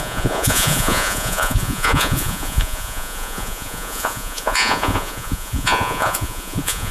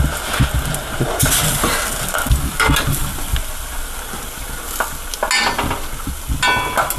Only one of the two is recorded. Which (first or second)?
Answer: second